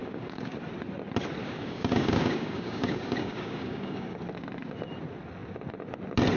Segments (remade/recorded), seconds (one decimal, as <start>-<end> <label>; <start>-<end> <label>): 0.0-0.6 remade; 0.6-1.4 recorded; 1.4-4.2 remade; 4.2-6.4 recorded